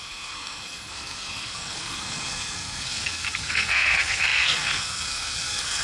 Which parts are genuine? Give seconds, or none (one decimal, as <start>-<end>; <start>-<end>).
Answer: none